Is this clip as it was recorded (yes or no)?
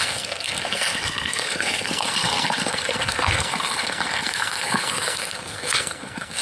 no